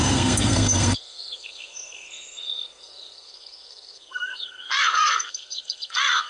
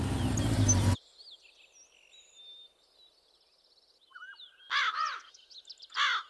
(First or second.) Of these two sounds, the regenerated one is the first